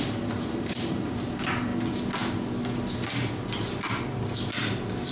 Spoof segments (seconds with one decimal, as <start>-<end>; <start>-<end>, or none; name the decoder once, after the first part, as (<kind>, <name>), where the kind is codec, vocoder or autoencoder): 0.0-1.7 (vocoder, BigVGAN v2)